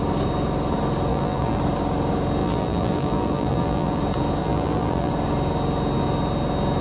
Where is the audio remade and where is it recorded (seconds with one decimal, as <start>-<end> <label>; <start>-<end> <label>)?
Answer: 0.0-1.1 recorded; 1.1-1.6 remade; 1.6-2.4 recorded; 2.4-4.0 remade; 4.0-4.4 recorded; 4.4-5.1 remade; 5.1-6.8 recorded